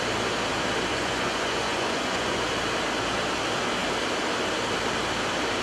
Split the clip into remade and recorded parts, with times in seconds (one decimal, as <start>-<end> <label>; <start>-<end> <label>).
0.0-0.9 recorded; 0.9-2.4 remade; 2.4-5.6 recorded